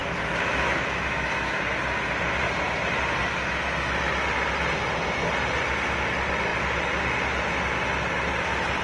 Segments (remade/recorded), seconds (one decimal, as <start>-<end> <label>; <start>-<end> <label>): 0.0-1.6 remade; 1.6-8.8 recorded